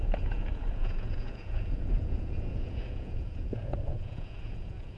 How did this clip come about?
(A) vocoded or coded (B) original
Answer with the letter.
A